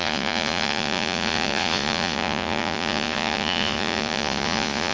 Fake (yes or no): yes